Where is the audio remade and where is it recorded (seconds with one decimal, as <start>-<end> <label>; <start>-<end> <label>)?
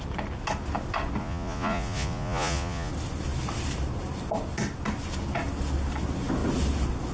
0.0-1.2 recorded; 1.2-2.9 remade; 2.9-7.1 recorded